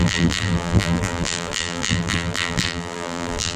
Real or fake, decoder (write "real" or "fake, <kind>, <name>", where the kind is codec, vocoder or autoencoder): fake, vocoder, BigVGAN v2